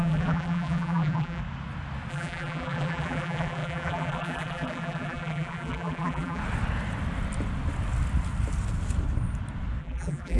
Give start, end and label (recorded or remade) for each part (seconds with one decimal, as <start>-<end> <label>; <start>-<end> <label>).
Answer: 0.0-1.4 remade; 1.4-2.1 recorded; 2.1-6.4 remade; 6.4-9.8 recorded; 9.8-10.4 remade